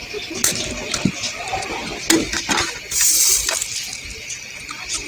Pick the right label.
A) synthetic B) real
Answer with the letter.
B